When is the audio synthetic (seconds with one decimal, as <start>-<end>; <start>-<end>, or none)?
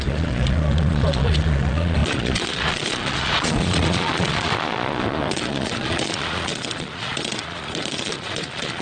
0.0-8.8